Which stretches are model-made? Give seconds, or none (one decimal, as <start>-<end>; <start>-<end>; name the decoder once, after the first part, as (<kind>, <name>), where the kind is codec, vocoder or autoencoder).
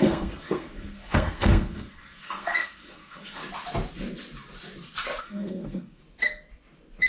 0.0-3.4 (codec, SNAC); 5.2-6.0